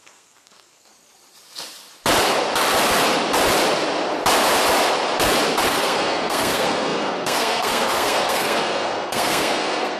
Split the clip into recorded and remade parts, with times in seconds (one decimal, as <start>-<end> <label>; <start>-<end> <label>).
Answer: 0.0-0.9 remade; 0.9-5.7 recorded; 5.7-10.0 remade

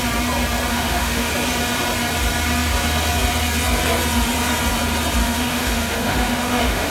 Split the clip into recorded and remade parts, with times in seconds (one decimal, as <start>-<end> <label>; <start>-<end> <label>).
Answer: 0.0-0.7 recorded; 0.7-1.3 remade; 1.3-5.2 recorded; 5.2-6.9 remade

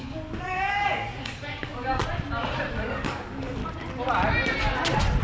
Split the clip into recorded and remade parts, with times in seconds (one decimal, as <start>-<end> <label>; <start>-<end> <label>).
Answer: 0.0-2.0 remade; 2.0-2.7 recorded; 2.7-3.6 remade; 3.6-5.2 recorded

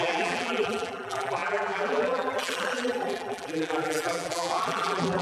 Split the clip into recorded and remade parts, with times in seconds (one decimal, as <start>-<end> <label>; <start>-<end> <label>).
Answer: 0.0-5.2 remade

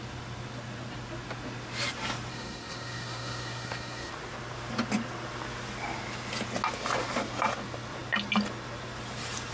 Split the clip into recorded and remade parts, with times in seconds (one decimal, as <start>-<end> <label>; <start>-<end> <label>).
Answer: 0.0-2.3 recorded; 2.3-4.1 remade; 4.1-9.5 recorded

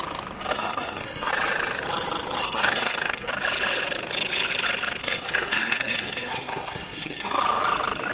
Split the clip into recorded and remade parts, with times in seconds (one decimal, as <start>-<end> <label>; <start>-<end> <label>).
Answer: 0.0-0.5 recorded; 0.5-1.3 remade; 1.3-2.4 recorded; 2.4-3.3 remade; 3.3-5.0 recorded; 5.0-7.4 remade; 7.4-8.1 recorded

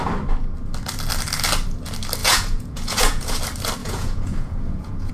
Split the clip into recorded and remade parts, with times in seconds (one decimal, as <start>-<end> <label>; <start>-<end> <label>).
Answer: 0.0-2.2 recorded; 2.2-3.4 remade; 3.4-3.8 recorded; 3.8-5.1 remade

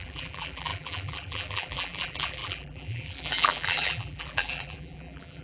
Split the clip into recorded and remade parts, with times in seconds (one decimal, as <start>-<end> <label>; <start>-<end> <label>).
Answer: 0.0-5.4 remade